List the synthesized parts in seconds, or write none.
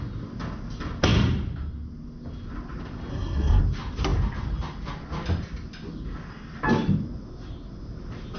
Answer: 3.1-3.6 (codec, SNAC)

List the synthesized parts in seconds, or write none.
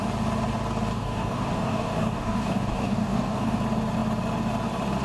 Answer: 0.9-3.6 (codec, DAC)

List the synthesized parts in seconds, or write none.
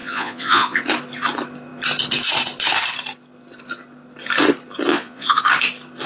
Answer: 0.0-0.8 (vocoder, Vocos); 4.9-5.4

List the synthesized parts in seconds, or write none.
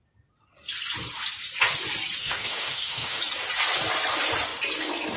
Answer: 2.2-3.2 (autoencoder, DAC-VAE)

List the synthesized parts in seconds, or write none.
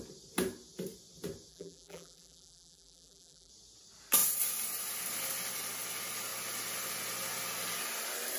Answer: 1.5-3.5 (vocoder, BigVGAN v2)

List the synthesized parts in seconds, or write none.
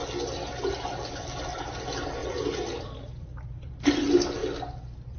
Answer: 2.2-3.7 (vocoder, BigVGAN v2)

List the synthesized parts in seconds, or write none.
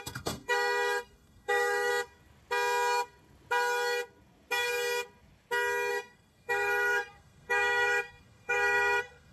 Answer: 0.0-1.9 (codec, SNAC); 5.9-9.3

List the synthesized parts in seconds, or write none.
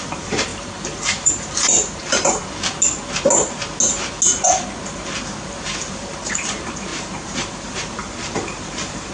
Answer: 0.0-2.4 (vocoder, BigVGAN v2); 6.2-9.1